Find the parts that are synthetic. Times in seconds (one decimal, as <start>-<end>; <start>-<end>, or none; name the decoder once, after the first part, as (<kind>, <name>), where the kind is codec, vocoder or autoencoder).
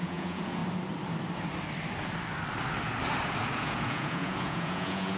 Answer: 0.0-0.6 (vocoder, Vocos); 3.6-5.2